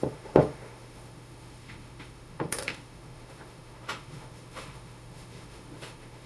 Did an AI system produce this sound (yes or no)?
yes